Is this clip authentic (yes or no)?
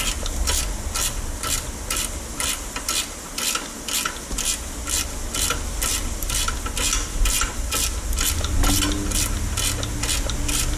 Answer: yes